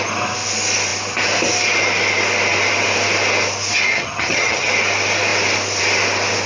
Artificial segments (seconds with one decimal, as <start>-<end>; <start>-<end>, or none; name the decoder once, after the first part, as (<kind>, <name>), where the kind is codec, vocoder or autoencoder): 3.9-4.7 (vocoder, HiFi-GAN)